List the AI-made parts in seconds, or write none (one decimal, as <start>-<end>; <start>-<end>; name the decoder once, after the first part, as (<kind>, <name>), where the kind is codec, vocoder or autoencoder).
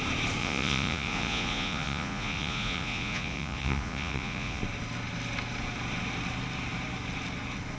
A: 0.4-4.6 (vocoder, Vocos)